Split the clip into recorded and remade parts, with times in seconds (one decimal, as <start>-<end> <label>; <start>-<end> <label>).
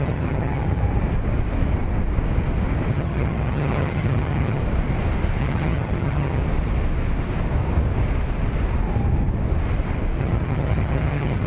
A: 0.0-0.8 remade; 0.8-2.9 recorded; 2.9-4.6 remade; 4.6-5.4 recorded; 5.4-6.4 remade; 6.4-10.2 recorded; 10.2-11.5 remade